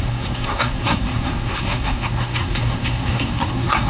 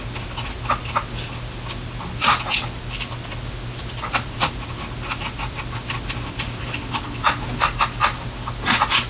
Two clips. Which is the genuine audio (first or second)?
second